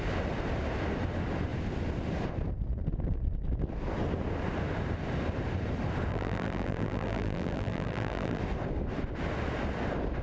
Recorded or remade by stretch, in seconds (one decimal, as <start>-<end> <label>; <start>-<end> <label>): 0.0-6.1 recorded; 6.1-8.4 remade; 8.4-10.2 recorded